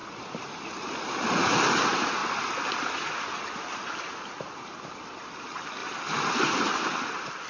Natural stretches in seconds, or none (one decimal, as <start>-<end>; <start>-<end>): 1.1-5.8; 6.6-7.5